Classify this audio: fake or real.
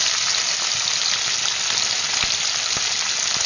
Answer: real